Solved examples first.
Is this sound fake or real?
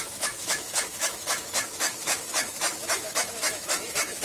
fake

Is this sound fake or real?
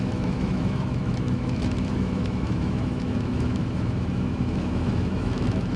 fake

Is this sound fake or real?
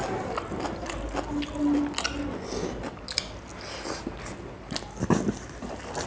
real